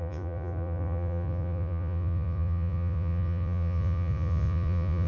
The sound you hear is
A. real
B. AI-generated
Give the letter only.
B